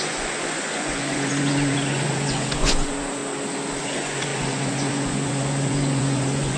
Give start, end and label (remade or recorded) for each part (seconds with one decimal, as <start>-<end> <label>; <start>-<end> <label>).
0.0-3.2 remade; 3.2-3.8 recorded; 3.8-6.6 remade

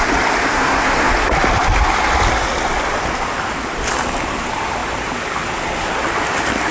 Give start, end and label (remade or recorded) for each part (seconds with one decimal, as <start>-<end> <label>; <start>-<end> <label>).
0.0-0.5 recorded; 0.5-1.1 remade; 1.1-6.7 recorded

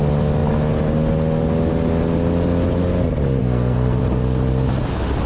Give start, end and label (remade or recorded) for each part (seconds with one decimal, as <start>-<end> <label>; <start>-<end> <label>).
0.0-3.4 recorded; 3.4-4.0 remade; 4.0-5.3 recorded

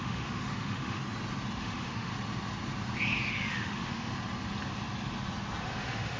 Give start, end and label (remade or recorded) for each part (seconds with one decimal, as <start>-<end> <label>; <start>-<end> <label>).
0.0-1.0 remade; 1.0-1.6 recorded; 1.6-2.1 remade; 2.1-3.3 recorded; 3.3-4.1 remade; 4.1-5.6 recorded; 5.6-6.2 remade

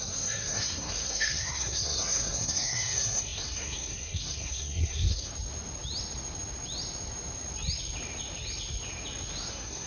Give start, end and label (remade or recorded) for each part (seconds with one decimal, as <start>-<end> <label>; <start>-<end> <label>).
0.0-5.3 remade; 5.3-9.5 recorded; 9.5-9.9 remade

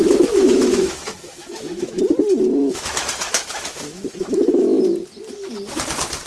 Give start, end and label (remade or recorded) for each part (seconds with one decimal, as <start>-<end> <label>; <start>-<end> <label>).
0.0-2.0 remade; 2.0-2.6 recorded; 2.6-4.8 remade; 4.8-6.3 recorded

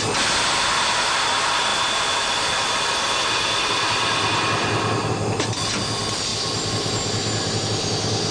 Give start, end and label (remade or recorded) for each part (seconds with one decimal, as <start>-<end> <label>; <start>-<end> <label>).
0.0-8.3 recorded